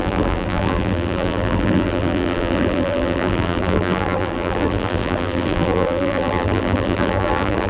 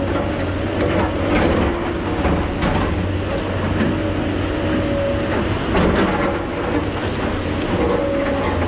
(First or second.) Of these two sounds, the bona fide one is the second